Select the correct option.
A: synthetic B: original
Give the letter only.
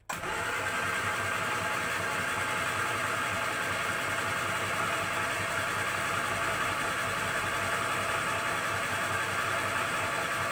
B